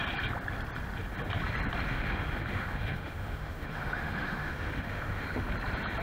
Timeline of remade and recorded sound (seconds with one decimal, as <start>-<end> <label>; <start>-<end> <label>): 0.0-1.9 recorded; 1.9-5.5 remade; 5.5-6.0 recorded